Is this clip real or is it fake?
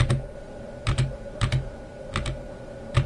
fake